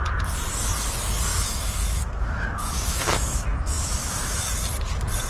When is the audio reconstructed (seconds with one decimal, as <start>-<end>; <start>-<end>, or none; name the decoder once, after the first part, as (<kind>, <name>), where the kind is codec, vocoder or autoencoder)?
1.3-4.5 (autoencoder, DAC-VAE)